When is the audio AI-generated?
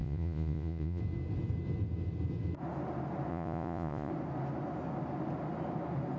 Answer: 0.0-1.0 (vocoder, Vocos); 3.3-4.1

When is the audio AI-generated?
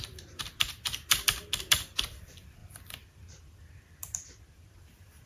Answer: 0.0-5.3 (vocoder, BigVGAN v2)